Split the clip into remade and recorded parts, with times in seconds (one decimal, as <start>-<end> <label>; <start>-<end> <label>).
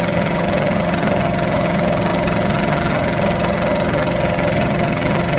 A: 0.0-5.4 remade